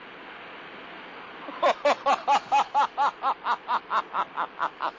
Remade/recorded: recorded